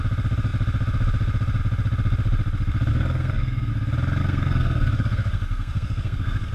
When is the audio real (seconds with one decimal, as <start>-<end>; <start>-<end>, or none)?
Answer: 0.0-2.9; 3.7-4.2